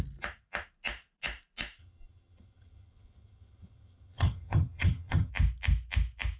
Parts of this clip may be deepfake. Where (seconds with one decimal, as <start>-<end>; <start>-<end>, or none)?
1.8-5.3